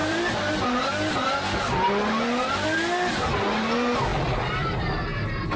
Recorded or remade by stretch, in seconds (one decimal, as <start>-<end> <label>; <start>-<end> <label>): 0.0-4.1 recorded; 4.1-4.9 remade; 4.9-5.6 recorded